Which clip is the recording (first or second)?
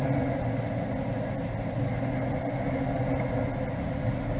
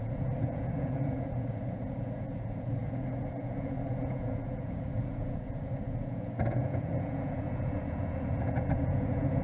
first